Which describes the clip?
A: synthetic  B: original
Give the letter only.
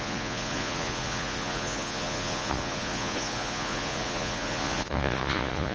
A